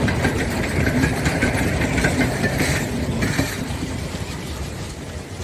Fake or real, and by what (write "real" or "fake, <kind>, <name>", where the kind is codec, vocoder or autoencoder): fake, vocoder, BigVGAN v2